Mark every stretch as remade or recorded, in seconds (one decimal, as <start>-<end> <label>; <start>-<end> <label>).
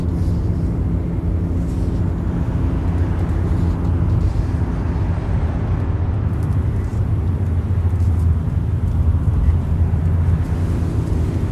0.0-11.5 recorded